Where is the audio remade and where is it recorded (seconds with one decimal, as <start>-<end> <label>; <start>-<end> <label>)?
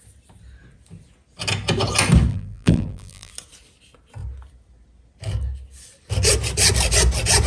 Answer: 0.0-2.3 recorded; 2.3-3.3 remade; 3.3-7.5 recorded